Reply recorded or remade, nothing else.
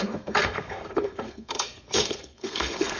remade